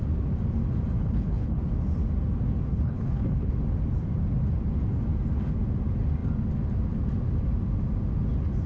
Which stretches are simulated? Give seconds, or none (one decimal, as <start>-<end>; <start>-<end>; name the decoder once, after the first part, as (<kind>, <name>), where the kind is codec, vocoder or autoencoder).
1.0-1.6 (codec, HILCodec); 2.7-3.5